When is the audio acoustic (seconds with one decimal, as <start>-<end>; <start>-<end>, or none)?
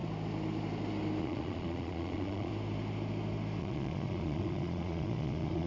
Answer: 0.0-1.2; 2.5-3.6